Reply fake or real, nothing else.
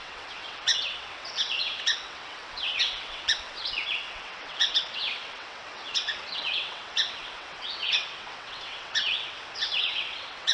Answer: fake